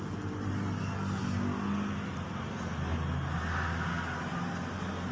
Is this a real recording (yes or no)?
yes